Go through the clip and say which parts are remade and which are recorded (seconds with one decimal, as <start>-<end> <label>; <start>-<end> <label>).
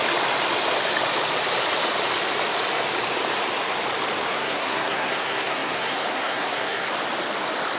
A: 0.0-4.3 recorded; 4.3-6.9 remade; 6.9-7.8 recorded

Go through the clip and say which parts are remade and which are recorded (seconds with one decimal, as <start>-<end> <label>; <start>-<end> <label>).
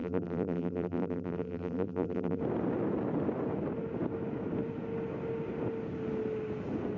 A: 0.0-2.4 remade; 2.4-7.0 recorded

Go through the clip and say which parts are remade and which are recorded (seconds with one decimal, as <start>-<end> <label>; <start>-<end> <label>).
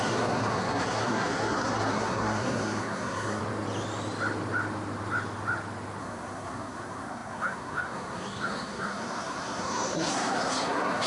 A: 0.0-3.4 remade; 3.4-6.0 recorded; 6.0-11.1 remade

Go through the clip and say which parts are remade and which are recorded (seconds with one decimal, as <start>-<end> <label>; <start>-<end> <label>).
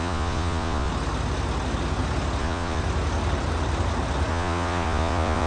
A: 0.0-0.9 remade; 0.9-2.4 recorded; 2.4-2.8 remade; 2.8-4.3 recorded; 4.3-5.5 remade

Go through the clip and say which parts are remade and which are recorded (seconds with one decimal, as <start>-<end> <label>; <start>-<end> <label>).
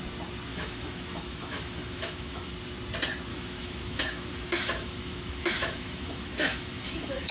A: 0.0-0.5 recorded; 0.5-2.5 remade; 2.5-3.3 recorded; 3.3-7.3 remade